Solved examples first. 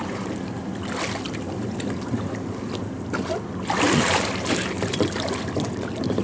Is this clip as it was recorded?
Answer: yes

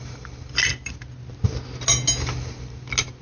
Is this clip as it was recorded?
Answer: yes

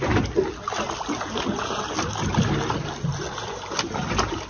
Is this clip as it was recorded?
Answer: yes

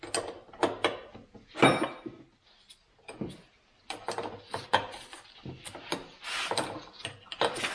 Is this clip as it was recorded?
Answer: yes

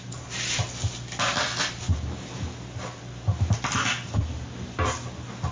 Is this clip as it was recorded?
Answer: yes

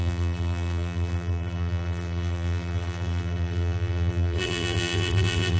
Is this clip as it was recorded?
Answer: no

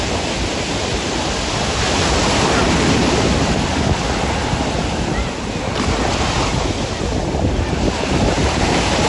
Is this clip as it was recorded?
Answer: yes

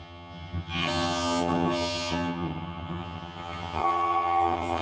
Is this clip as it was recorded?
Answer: no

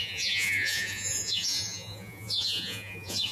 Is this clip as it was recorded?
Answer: no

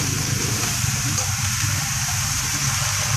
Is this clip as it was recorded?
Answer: no